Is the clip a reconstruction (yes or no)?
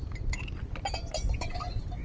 no